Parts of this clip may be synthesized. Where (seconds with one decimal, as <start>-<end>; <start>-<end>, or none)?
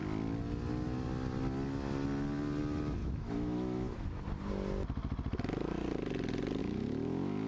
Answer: 3.0-4.2; 6.6-7.5